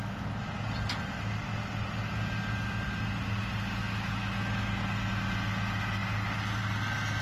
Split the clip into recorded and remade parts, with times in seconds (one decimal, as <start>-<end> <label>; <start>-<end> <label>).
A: 0.0-3.8 recorded; 3.8-4.7 remade; 4.7-7.2 recorded